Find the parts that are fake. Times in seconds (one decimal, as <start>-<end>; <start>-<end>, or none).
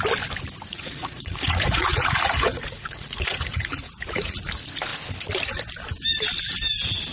0.7-4.4